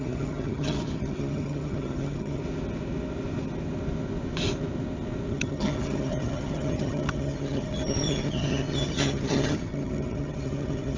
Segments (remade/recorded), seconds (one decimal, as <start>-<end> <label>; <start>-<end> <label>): 0.0-2.4 remade; 2.4-5.3 recorded; 5.3-11.0 remade